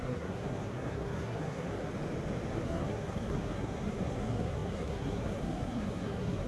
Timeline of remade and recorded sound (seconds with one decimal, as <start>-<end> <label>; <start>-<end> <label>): 0.0-1.9 remade; 1.9-2.5 recorded; 2.5-6.5 remade